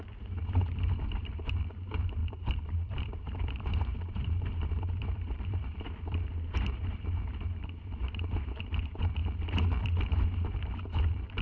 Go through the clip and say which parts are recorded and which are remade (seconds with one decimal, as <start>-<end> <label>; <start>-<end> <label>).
0.0-9.2 remade; 9.2-10.1 recorded; 10.1-11.4 remade